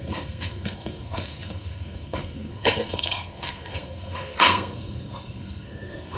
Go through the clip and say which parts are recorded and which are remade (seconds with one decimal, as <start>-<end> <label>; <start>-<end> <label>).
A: 0.0-6.2 remade